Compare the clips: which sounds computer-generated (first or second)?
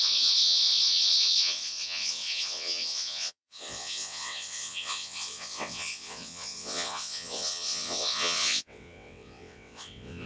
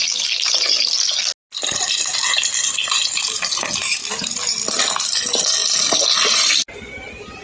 first